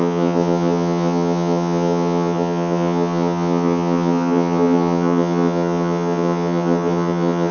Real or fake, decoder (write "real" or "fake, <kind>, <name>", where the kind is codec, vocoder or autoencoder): fake, vocoder, HiFi-GAN